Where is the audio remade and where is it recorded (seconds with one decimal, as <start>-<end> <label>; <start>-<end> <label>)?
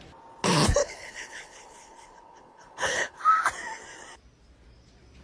0.0-0.8 recorded; 0.8-3.2 remade; 3.2-5.2 recorded